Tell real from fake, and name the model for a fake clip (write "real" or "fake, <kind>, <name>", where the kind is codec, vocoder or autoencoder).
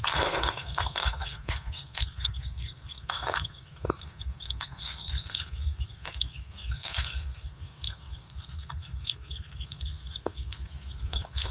fake, codec, SNAC